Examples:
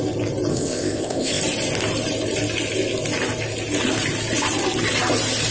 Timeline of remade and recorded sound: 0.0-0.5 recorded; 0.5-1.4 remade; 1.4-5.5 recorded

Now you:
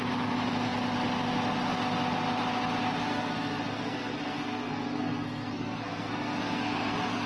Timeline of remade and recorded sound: 0.0-3.1 recorded; 3.1-7.3 remade